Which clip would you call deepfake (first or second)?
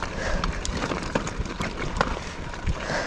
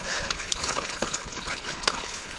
second